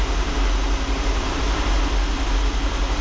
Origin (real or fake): real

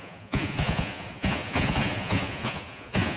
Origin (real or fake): fake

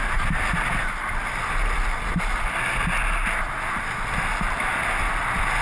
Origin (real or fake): real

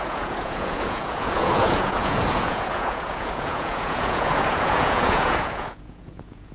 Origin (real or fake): fake